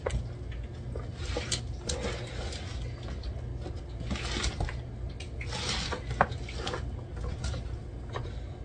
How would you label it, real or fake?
real